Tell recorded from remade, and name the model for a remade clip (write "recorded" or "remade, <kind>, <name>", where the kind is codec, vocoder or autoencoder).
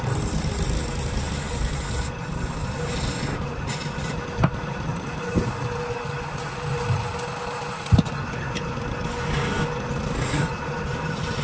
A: recorded